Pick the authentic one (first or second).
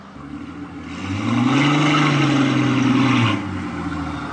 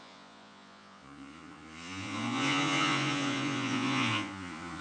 first